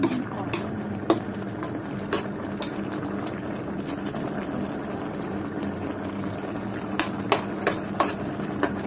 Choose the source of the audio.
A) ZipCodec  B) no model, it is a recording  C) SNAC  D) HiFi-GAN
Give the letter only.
B